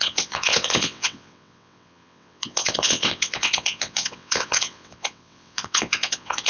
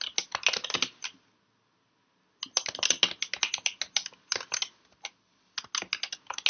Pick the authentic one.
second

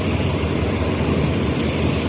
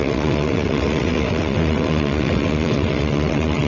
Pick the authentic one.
first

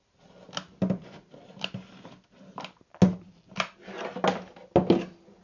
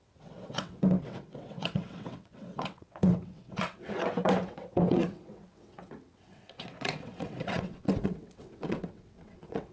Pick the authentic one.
first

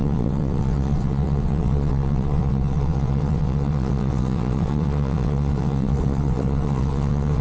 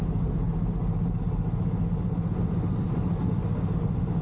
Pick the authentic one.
second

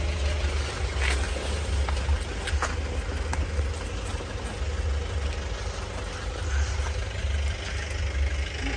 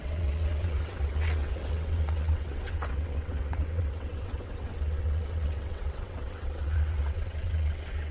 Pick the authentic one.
first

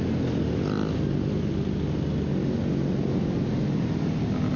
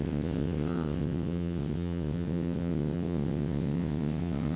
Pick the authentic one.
first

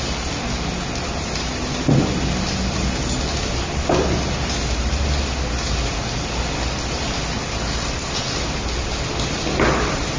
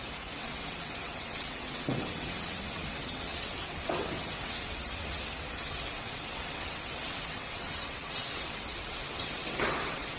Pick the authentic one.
first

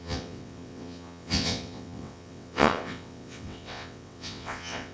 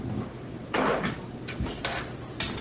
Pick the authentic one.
second